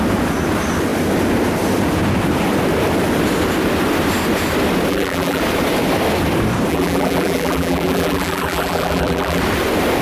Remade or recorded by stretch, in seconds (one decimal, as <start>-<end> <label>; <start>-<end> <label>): 0.0-4.9 recorded; 4.9-5.4 remade; 5.4-6.7 recorded; 6.7-9.4 remade; 9.4-10.0 recorded